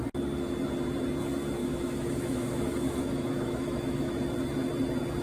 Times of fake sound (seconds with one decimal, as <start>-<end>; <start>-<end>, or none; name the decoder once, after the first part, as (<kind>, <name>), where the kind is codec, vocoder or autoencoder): 1.6-4.1 (autoencoder, DAC-VAE)